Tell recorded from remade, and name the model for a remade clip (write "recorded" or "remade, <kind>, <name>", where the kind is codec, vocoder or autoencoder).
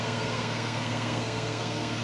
remade, codec, SNAC